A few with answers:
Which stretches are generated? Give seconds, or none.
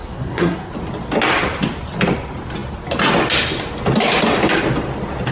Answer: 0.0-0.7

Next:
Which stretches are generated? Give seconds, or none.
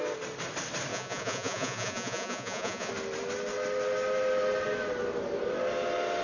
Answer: 0.9-2.9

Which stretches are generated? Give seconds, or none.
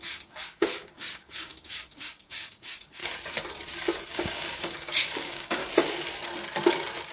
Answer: 0.0-3.0; 4.1-5.6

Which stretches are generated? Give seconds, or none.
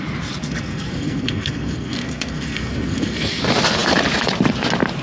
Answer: 0.4-3.4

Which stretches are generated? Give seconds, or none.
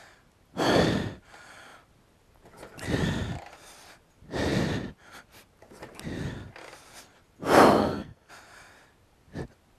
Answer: 7.8-8.3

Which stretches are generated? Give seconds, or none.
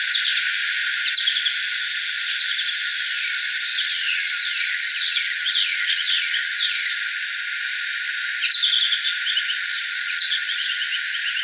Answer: 3.7-6.9; 9.7-10.8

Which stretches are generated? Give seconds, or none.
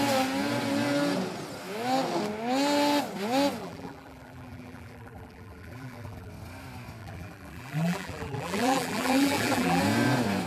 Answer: 3.6-6.3; 7.0-9.8